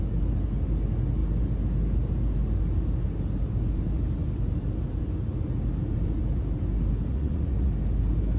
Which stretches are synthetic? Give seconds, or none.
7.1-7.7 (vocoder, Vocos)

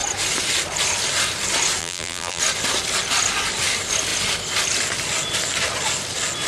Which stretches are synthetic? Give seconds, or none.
1.8-2.4 (vocoder, BigVGAN v2)

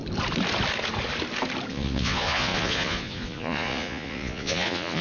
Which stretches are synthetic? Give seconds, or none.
1.7-5.0 (vocoder, Vocos)

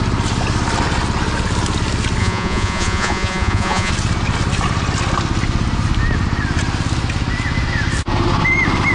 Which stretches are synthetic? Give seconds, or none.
2.2-3.9 (vocoder, Vocos)

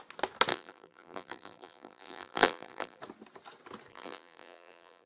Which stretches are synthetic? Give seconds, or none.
0.5-3.0 (vocoder, BigVGAN v2); 3.9-5.1